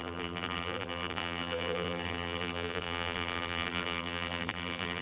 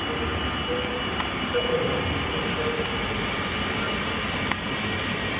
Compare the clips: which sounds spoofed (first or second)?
first